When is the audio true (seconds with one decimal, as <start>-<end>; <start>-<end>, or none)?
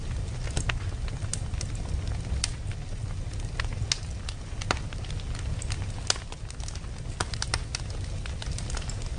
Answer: 0.0-9.2